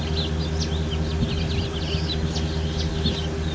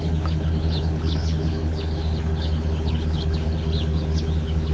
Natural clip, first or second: first